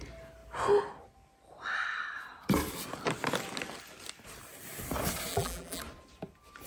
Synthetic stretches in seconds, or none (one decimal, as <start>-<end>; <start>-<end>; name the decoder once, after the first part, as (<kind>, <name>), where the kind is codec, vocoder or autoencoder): 5.3-5.8 (vocoder, BigVGAN v2)